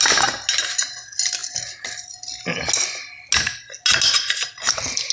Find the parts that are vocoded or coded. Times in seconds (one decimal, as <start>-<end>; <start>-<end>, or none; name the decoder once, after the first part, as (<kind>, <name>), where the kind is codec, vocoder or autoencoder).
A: none